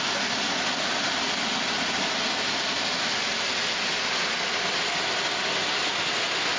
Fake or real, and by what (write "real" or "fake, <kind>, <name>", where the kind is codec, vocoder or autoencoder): real